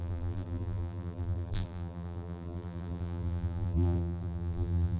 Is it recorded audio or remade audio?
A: remade